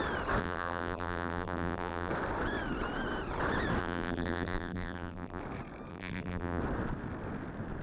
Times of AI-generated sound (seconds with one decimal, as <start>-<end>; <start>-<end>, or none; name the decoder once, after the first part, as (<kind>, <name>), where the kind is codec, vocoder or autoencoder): 0.4-2.1 (vocoder, BigVGAN v2); 3.8-5.4; 5.9-6.6